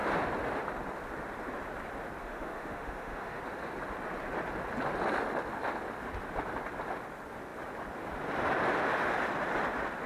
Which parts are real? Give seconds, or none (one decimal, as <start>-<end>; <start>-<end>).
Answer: 0.0-2.2; 3.4-10.1